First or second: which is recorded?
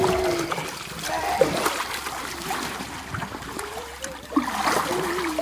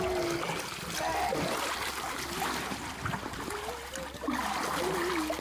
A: second